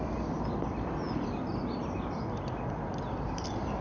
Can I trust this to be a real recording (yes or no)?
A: yes